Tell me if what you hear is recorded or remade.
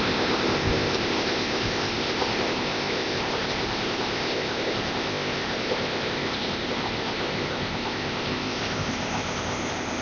remade